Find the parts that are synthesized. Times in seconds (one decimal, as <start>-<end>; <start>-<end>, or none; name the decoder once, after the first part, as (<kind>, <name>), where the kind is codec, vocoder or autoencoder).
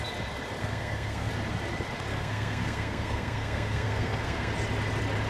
0.6-1.3 (codec, SNAC); 2.1-4.5